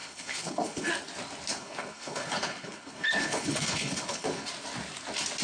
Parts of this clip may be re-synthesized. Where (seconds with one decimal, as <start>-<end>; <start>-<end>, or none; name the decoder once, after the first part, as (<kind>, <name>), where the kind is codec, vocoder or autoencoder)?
0.0-0.9 (codec, HILCodec); 1.5-4.5